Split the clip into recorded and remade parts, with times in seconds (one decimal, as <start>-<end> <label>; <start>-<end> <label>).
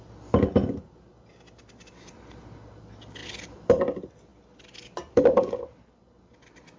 0.0-6.8 recorded